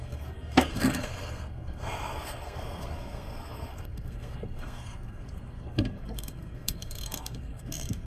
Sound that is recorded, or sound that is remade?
remade